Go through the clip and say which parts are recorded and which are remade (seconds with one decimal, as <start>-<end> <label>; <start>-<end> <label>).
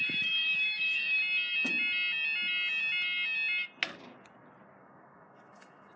0.0-1.2 remade; 1.2-4.8 recorded; 4.8-6.0 remade